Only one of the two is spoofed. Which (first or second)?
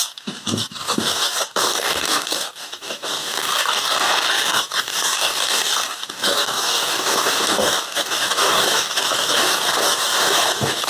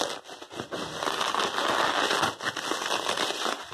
first